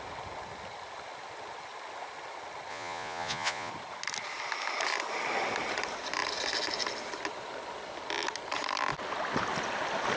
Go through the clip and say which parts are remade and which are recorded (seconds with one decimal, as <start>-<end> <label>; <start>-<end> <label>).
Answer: 0.0-2.7 recorded; 2.7-3.7 remade; 3.7-10.2 recorded